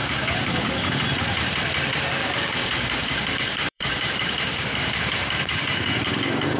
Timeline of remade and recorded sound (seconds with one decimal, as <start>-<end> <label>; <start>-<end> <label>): 0.0-1.0 remade; 1.0-2.2 recorded; 2.2-6.6 remade